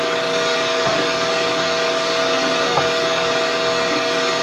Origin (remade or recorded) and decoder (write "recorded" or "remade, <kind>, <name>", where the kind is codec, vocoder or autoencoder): remade, codec, DAC